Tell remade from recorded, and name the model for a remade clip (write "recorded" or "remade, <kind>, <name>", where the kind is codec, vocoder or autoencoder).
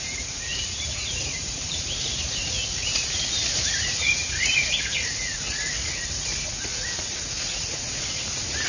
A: remade, vocoder, Vocos